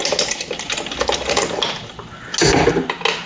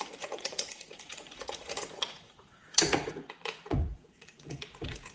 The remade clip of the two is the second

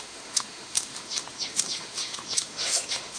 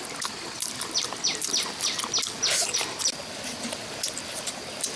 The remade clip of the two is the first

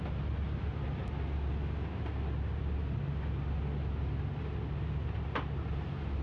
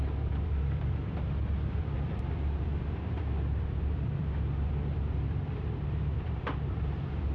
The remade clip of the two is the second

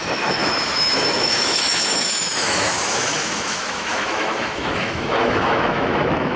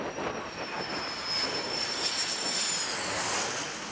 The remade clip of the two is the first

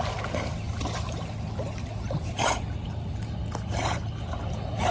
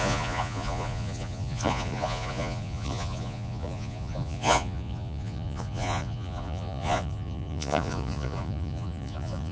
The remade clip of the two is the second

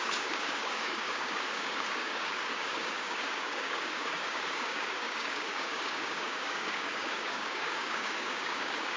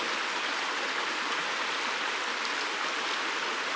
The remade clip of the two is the first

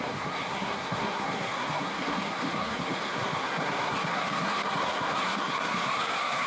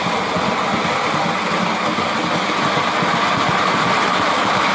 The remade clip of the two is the first